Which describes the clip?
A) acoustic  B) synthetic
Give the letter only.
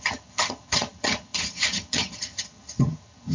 B